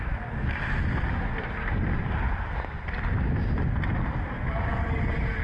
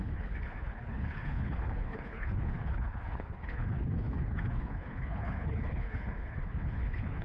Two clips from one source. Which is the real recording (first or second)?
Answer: first